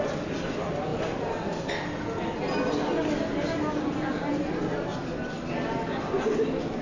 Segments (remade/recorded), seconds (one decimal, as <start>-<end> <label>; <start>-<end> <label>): 0.0-6.8 recorded